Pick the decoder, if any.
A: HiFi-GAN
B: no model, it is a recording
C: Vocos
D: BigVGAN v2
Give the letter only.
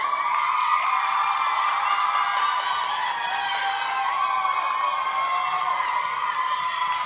B